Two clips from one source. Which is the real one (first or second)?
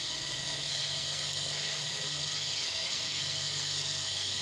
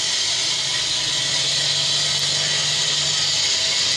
second